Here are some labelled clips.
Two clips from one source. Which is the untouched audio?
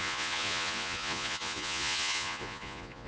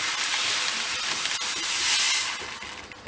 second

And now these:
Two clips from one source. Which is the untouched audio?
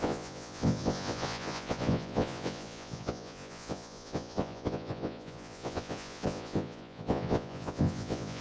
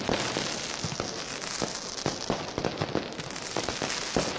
second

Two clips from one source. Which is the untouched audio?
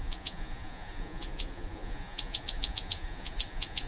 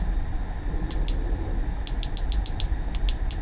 second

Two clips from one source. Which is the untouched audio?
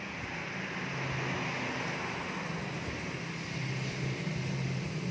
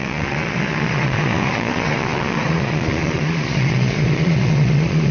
first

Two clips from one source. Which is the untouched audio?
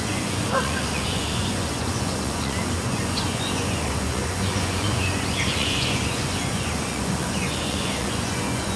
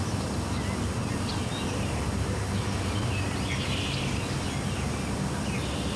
second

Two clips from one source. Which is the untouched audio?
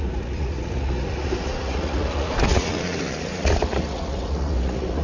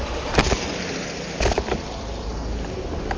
second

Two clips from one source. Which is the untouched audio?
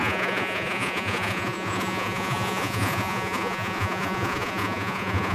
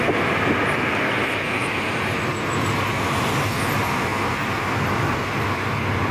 second